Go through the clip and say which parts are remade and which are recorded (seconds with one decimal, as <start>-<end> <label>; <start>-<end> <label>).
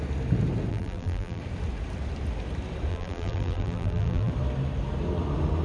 0.0-0.7 recorded; 0.7-1.4 remade; 1.4-2.9 recorded; 2.9-4.3 remade; 4.3-5.6 recorded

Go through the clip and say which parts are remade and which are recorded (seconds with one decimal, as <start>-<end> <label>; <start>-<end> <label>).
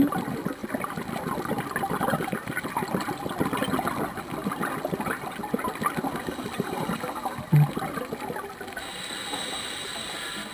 0.0-10.5 recorded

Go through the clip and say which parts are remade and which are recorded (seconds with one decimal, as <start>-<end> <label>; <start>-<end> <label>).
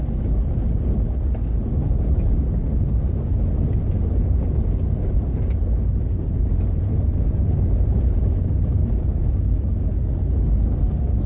0.0-1.7 recorded; 1.7-2.3 remade; 2.3-5.3 recorded; 5.3-9.3 remade; 9.3-11.3 recorded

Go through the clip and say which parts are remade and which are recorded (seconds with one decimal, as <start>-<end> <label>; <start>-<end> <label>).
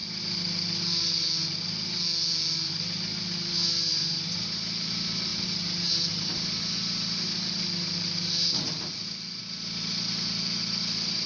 0.0-11.3 recorded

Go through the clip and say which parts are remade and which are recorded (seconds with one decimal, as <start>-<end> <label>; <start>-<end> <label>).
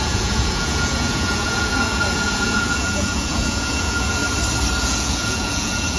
0.0-4.2 remade; 4.2-4.8 recorded; 4.8-6.0 remade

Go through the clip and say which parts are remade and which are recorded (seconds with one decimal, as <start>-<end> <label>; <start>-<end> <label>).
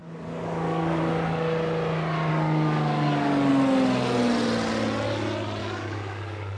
0.0-1.0 remade; 1.0-2.3 recorded; 2.3-3.5 remade; 3.5-5.6 recorded; 5.6-6.6 remade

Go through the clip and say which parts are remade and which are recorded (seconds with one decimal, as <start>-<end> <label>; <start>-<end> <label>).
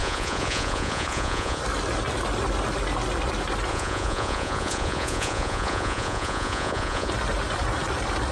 0.0-1.6 remade; 1.6-3.7 recorded; 3.7-7.1 remade; 7.1-8.3 recorded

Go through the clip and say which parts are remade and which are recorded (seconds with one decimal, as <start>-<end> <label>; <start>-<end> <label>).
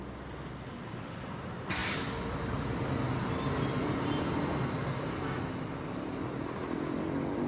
0.0-7.5 recorded